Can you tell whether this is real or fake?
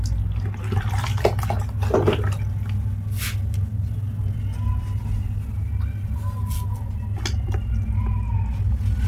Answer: real